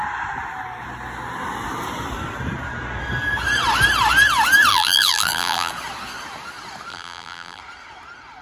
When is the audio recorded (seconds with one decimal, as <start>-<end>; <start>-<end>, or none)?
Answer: 0.0-4.7; 5.7-6.9; 7.6-8.4